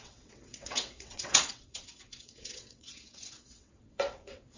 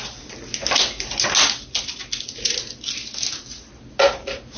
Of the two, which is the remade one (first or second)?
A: first